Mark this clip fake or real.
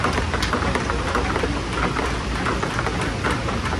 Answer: real